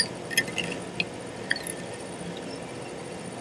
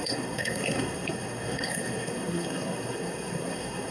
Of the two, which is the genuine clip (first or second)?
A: first